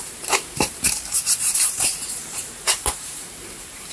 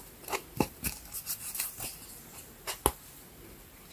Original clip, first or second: second